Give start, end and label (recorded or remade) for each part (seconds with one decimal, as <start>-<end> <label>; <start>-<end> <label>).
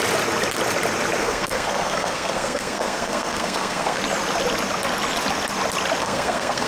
0.0-1.2 recorded; 1.2-4.0 remade; 4.0-6.0 recorded; 6.0-6.7 remade